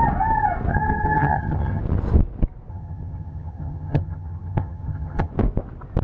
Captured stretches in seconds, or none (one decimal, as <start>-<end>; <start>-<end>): 0.0-0.7; 1.8-2.7; 5.3-6.0